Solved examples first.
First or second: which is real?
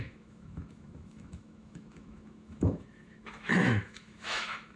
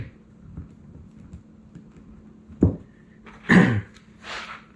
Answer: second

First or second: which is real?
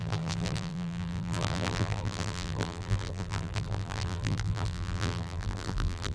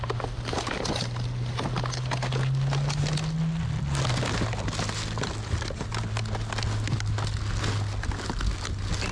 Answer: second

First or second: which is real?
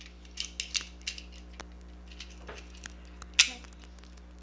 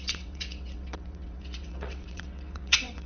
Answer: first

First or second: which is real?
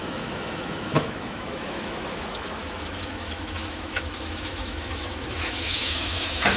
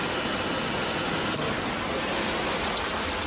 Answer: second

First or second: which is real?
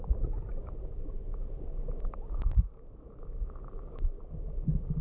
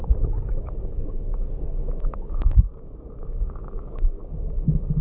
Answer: first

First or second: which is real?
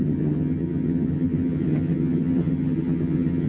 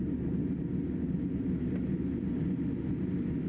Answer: second